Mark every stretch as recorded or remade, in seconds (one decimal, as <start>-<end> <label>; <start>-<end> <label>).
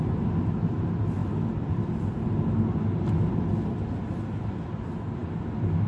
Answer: 0.0-5.9 recorded